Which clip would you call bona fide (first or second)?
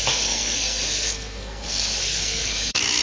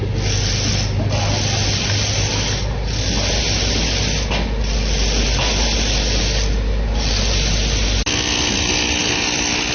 second